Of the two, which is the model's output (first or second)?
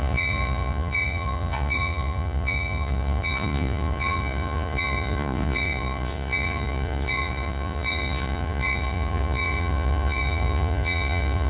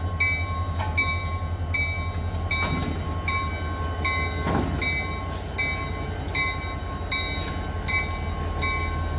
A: first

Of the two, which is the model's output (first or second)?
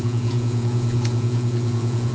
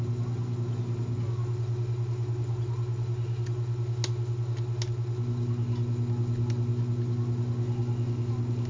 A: first